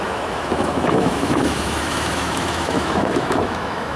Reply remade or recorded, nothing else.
remade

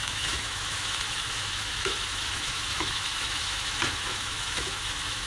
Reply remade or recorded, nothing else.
remade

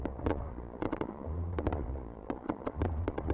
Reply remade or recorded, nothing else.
remade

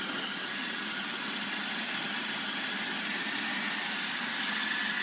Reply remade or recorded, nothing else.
recorded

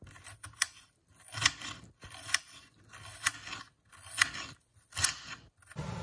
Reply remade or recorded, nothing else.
recorded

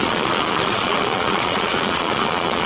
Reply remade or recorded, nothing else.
remade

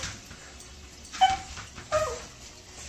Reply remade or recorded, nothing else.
recorded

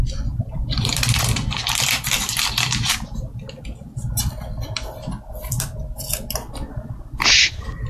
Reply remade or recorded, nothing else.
remade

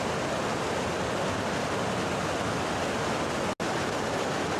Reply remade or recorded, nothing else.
recorded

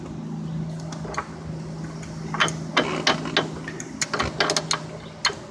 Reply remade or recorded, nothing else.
recorded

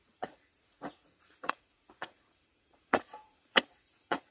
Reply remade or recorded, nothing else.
remade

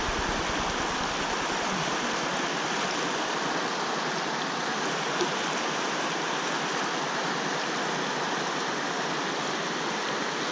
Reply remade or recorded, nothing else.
recorded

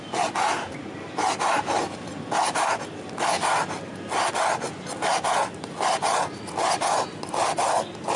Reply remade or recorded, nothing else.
recorded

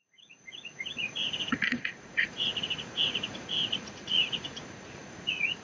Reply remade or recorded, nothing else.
remade